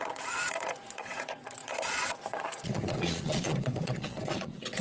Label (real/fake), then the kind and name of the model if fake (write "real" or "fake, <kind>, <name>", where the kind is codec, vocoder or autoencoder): fake, vocoder, Vocos